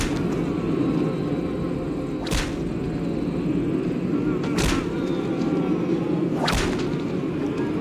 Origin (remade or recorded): recorded